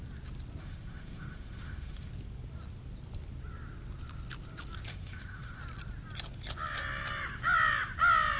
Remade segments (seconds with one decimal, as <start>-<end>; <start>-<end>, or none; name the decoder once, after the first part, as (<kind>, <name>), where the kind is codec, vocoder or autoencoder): 0.6-2.1 (autoencoder, DAC-VAE); 4.9-5.6